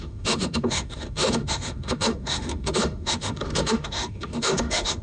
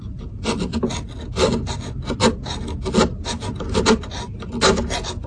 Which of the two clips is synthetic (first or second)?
first